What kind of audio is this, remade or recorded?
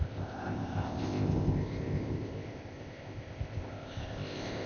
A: remade